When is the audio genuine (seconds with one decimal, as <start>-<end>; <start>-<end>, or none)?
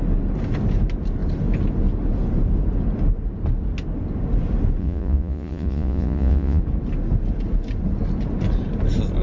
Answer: 0.0-4.8; 6.6-9.2